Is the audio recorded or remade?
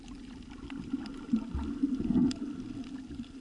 recorded